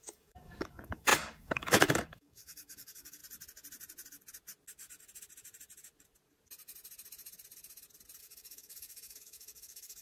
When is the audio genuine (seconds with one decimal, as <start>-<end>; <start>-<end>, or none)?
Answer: 3.2-8.2